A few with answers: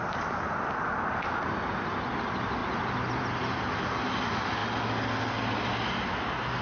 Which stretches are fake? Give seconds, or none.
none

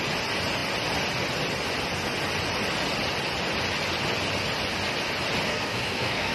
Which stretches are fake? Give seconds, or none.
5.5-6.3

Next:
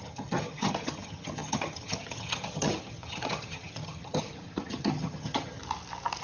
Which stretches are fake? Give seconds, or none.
0.0-5.6

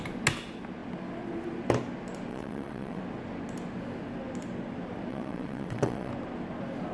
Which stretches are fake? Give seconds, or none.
2.3-3.0; 5.1-6.1